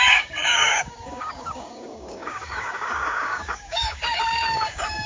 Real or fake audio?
fake